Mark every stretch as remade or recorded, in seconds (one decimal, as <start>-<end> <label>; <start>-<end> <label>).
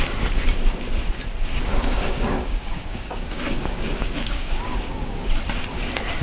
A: 0.0-1.7 recorded; 1.7-5.4 remade; 5.4-6.2 recorded